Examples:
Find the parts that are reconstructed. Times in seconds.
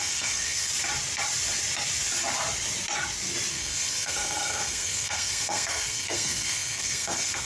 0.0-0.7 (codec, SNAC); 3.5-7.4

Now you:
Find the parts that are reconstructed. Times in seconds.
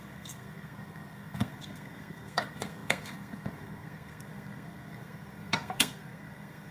0.0-6.7 (codec, SNAC)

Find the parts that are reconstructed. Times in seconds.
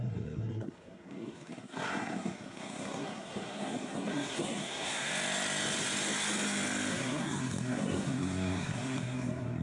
0.0-5.1 (codec, SNAC); 6.9-9.6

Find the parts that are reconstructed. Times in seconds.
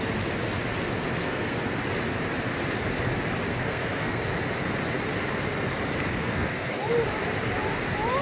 1.2-1.8 (codec, SNAC); 3.5-4.2; 6.2-6.7